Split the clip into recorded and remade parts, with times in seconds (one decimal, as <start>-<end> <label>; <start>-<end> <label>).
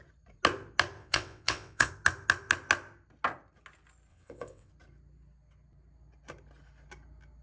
0.0-1.0 recorded; 1.0-1.9 remade; 1.9-4.1 recorded; 4.1-4.7 remade; 4.7-7.4 recorded